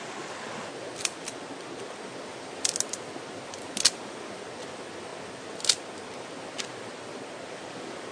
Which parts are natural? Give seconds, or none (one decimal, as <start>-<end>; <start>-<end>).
0.0-8.1